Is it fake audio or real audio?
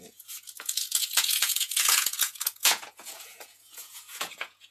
fake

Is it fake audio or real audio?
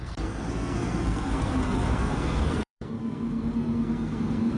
fake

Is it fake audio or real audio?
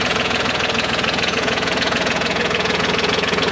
fake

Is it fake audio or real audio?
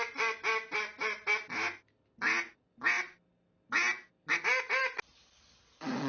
real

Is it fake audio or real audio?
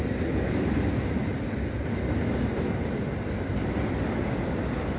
real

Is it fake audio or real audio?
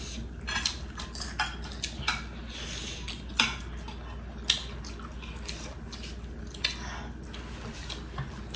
real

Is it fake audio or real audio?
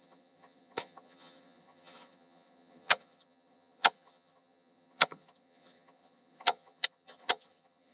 fake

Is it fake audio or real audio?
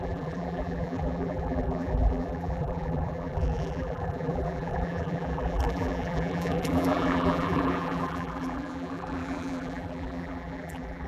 fake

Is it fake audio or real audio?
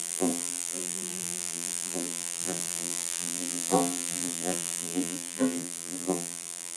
fake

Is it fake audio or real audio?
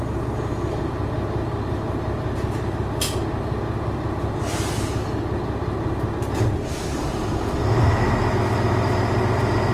real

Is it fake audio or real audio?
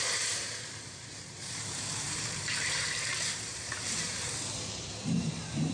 fake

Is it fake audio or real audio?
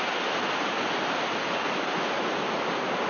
real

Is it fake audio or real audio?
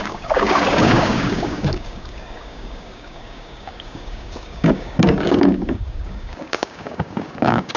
fake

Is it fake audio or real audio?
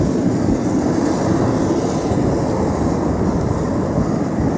real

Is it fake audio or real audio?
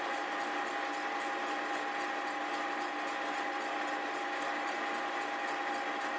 real